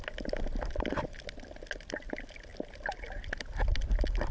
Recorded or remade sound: recorded